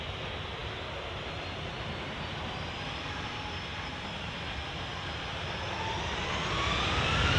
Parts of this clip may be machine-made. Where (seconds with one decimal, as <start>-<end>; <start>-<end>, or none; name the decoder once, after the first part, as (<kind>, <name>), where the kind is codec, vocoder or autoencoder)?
none